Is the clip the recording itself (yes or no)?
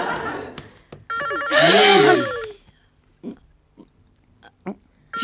yes